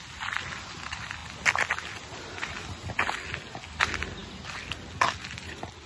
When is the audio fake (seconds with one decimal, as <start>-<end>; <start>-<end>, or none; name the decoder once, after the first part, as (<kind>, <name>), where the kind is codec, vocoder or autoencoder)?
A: none